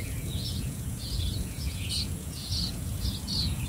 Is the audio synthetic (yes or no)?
yes